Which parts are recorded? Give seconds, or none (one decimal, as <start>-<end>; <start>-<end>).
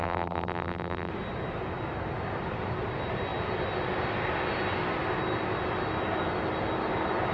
1.1-7.3